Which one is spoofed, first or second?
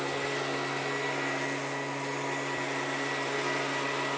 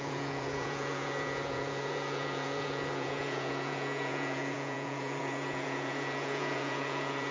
second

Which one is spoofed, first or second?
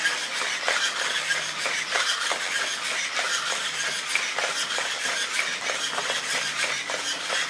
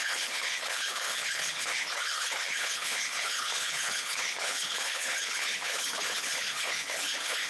second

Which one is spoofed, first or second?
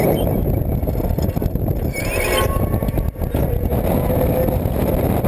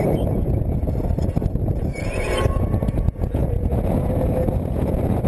second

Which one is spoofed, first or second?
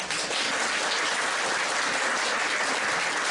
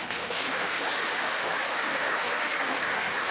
second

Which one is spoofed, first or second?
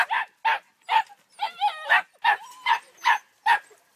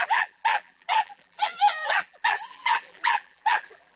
second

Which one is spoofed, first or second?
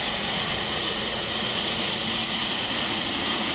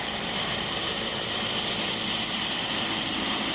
first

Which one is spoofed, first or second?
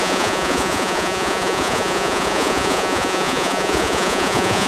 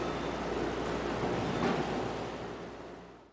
first